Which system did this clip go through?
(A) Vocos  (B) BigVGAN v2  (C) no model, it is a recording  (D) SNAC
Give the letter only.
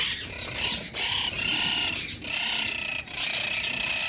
C